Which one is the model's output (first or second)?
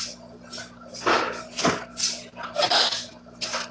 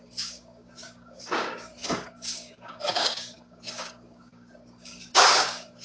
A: second